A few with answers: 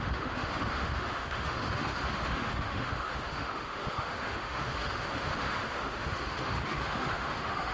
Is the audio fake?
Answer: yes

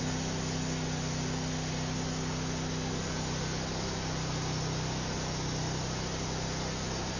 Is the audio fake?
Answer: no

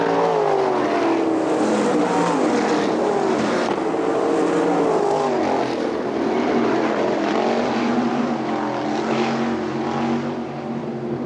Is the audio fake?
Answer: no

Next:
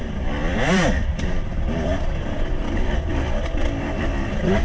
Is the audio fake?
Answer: yes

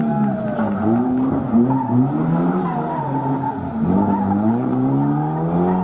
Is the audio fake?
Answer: no